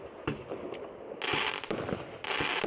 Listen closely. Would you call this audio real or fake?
real